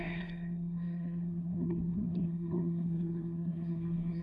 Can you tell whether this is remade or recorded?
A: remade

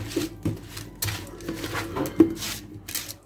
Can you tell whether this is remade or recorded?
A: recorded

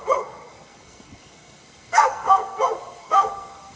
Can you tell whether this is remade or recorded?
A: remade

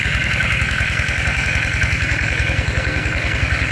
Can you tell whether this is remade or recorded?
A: remade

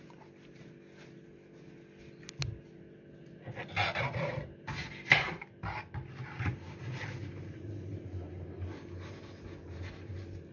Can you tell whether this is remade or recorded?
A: recorded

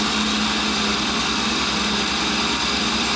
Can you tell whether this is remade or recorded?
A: recorded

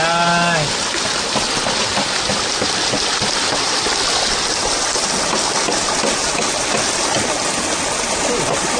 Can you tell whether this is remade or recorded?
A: recorded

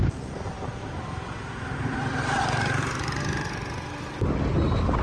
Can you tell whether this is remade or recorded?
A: recorded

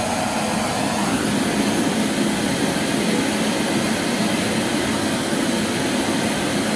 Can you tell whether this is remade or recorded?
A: recorded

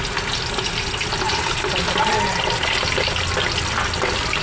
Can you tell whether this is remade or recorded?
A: recorded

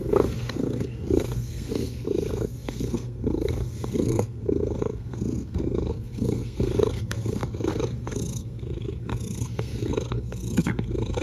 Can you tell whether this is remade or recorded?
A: remade